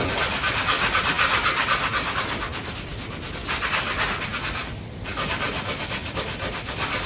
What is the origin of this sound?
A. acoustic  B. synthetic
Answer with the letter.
A